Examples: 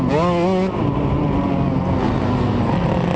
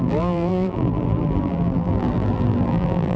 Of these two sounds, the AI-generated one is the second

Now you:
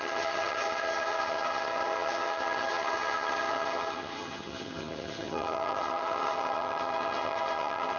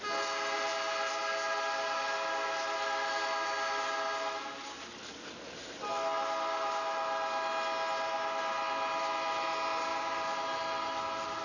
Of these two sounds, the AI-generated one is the first